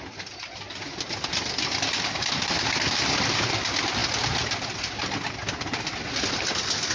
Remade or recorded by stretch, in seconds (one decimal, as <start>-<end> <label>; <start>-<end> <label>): 0.0-6.9 recorded